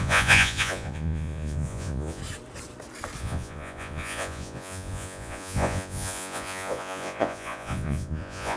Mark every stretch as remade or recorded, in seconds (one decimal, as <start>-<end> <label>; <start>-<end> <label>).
0.0-2.2 remade; 2.2-3.2 recorded; 3.2-8.6 remade